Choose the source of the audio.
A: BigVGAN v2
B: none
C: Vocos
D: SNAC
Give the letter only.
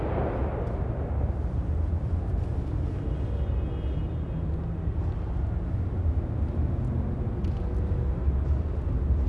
B